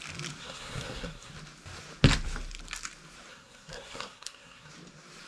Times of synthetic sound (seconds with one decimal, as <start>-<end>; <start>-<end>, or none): 0.4-1.3; 3.3-4.7